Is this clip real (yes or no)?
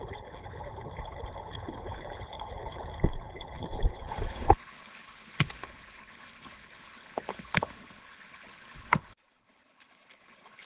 no